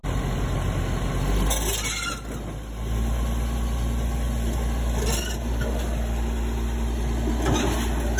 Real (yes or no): yes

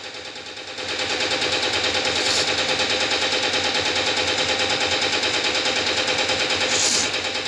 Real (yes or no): yes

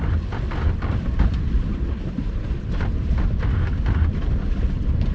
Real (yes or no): yes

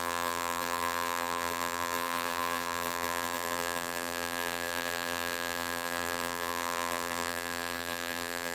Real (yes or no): no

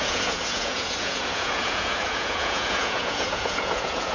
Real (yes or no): no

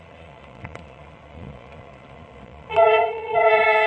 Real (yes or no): no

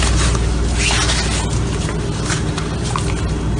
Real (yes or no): yes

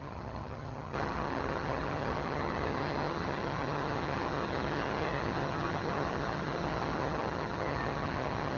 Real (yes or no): no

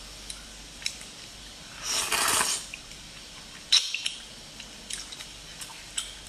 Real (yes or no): yes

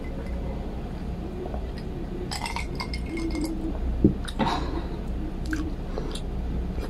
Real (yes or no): no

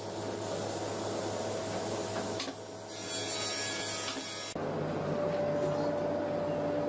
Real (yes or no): yes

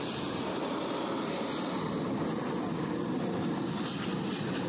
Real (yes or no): yes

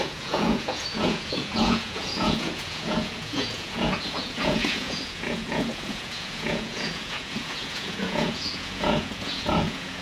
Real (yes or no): no